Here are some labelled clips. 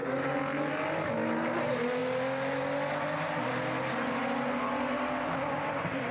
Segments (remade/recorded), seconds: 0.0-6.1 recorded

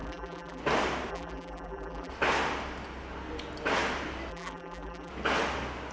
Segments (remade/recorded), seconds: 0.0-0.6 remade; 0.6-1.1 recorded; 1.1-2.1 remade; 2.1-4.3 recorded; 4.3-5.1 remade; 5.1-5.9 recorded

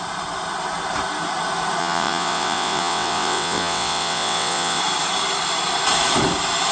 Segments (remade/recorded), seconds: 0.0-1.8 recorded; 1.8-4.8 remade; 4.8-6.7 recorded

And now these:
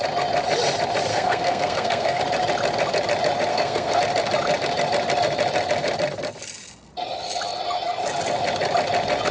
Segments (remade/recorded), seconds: 0.0-1.1 recorded; 1.1-2.2 remade; 2.2-3.5 recorded; 3.5-4.0 remade; 4.0-9.3 recorded